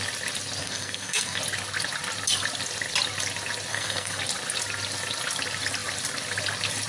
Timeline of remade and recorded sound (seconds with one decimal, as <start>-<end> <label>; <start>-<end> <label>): 0.0-0.6 recorded; 0.6-1.4 remade; 1.4-3.7 recorded; 3.7-4.2 remade; 4.2-6.9 recorded